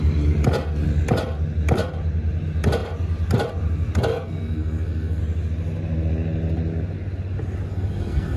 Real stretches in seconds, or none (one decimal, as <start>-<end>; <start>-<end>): 0.0-4.1; 5.2-7.7